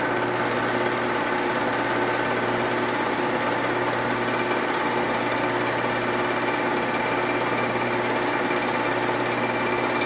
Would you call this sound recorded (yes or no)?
yes